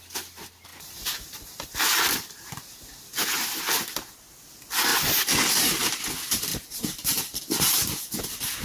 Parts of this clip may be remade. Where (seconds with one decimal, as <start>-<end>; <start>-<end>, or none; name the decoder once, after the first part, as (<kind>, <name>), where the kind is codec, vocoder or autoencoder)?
0.7-1.6 (vocoder, BigVGAN v2); 6.5-7.4